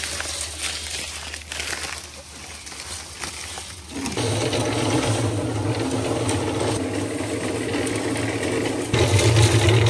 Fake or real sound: real